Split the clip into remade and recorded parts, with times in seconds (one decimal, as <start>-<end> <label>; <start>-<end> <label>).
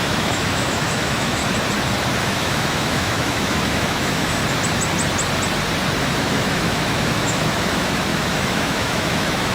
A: 0.0-1.4 remade; 1.4-2.2 recorded; 2.2-4.4 remade; 4.4-6.0 recorded; 6.0-9.5 remade